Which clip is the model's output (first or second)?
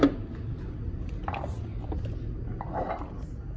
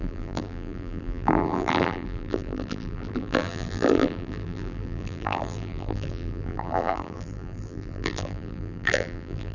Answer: second